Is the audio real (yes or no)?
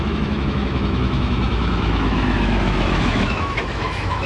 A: no